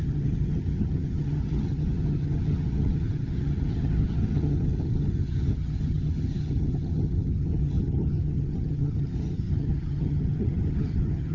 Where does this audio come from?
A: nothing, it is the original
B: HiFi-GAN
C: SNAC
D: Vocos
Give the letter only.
B